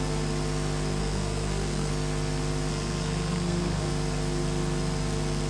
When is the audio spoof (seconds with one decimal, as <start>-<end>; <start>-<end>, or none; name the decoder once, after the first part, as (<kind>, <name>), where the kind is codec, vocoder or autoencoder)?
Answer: 1.0-1.9 (codec, SNAC); 2.7-3.9